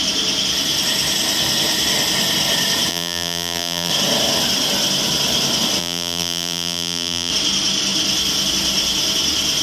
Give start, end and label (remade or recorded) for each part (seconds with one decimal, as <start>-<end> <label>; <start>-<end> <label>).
0.0-2.9 recorded; 2.9-3.9 remade; 3.9-5.8 recorded; 5.8-7.3 remade; 7.3-9.6 recorded

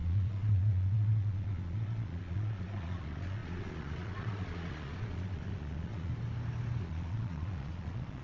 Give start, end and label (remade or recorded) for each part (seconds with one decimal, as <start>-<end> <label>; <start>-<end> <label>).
0.0-6.1 remade; 6.1-6.8 recorded; 6.8-8.2 remade